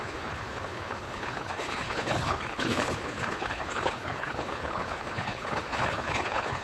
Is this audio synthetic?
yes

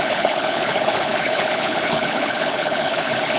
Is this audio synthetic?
yes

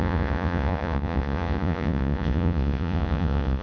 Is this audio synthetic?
yes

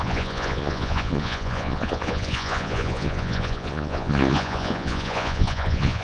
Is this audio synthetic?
yes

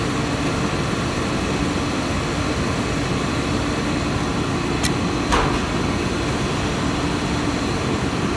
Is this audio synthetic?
no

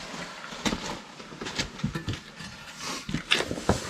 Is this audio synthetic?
no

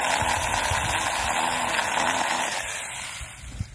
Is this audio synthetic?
no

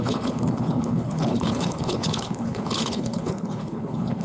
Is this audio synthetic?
yes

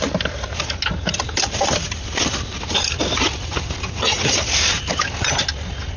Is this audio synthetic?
no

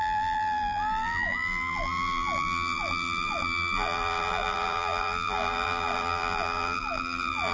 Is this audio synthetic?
yes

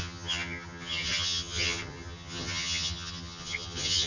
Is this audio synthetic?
yes